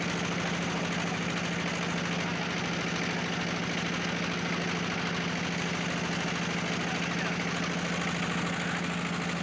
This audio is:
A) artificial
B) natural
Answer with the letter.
B